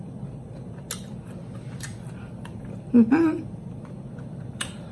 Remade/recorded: recorded